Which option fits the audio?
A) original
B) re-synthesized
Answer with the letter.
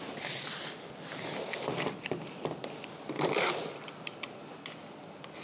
A